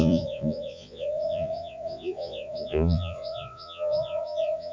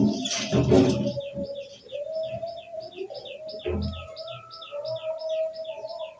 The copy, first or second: first